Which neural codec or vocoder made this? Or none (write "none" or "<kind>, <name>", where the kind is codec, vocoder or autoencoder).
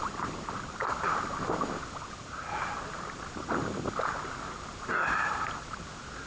none